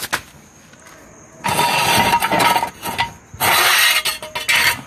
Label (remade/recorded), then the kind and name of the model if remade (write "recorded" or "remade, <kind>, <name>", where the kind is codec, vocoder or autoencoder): recorded